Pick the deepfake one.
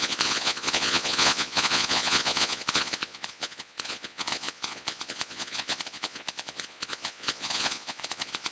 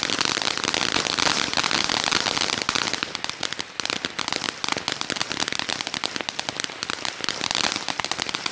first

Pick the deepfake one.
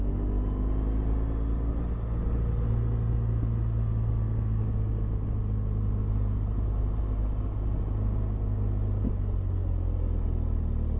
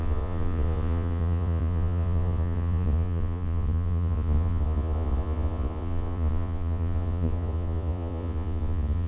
second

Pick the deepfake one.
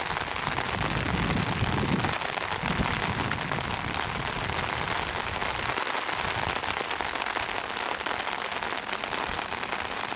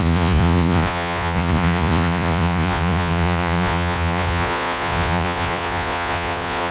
second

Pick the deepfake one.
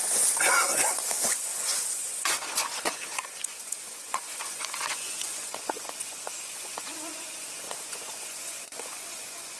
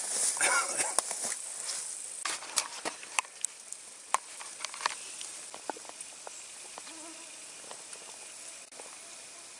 first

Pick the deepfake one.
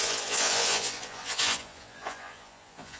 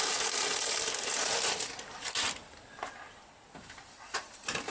first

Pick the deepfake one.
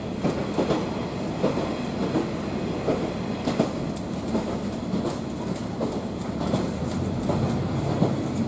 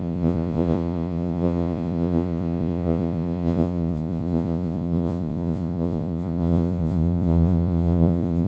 second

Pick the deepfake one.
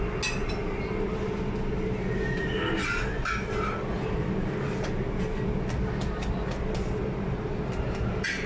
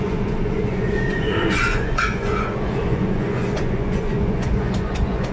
second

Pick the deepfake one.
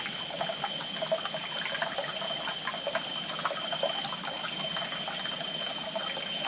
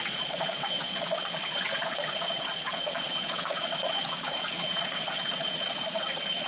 second